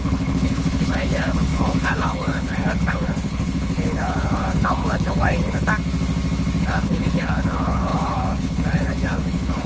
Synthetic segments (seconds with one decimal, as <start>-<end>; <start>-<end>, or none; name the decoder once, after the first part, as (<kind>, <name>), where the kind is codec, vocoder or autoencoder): 0.0-5.7 (codec, HILCodec); 6.6-9.7